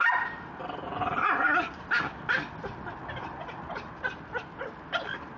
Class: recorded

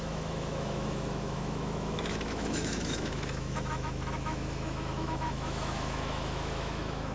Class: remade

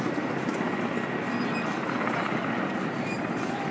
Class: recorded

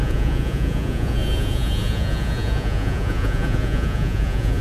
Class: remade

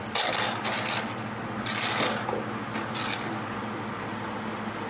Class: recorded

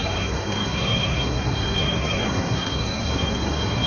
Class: remade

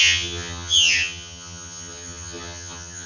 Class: remade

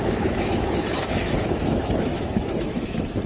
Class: remade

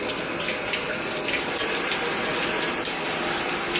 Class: recorded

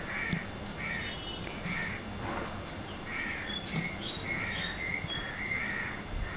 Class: recorded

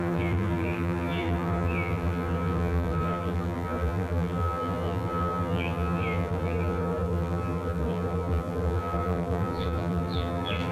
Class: remade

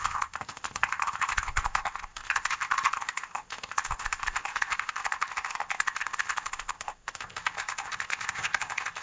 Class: remade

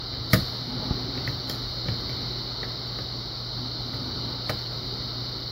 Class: recorded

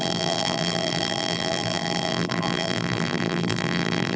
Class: remade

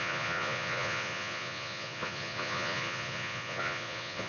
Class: remade